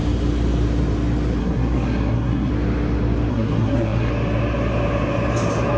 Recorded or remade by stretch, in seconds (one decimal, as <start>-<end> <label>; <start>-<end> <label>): 0.0-1.4 recorded; 1.4-2.5 remade; 2.5-3.3 recorded; 3.3-4.1 remade; 4.1-5.8 recorded